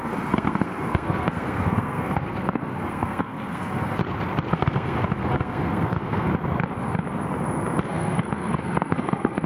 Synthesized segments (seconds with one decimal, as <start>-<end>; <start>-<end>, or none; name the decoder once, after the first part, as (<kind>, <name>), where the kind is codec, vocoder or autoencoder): 0.0-4.0 (codec, SNAC); 4.5-6.3; 7.9-9.5